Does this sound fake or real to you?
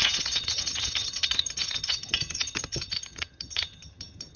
fake